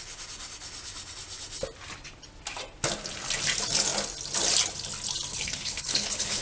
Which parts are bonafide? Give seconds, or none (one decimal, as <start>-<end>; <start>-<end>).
0.0-5.3